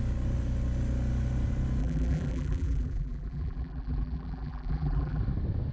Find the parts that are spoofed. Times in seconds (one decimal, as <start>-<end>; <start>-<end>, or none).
1.8-5.2